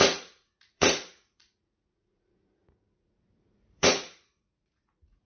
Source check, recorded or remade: remade